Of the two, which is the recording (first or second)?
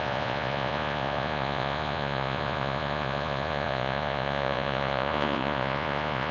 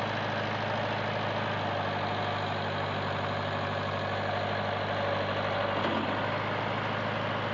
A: second